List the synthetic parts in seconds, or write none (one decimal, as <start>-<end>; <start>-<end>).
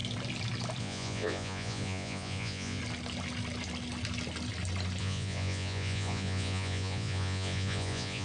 0.8-2.8; 5.0-8.2